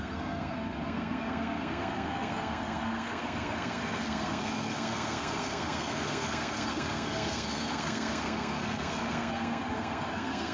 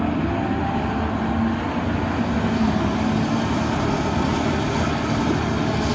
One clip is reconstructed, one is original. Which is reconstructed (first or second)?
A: first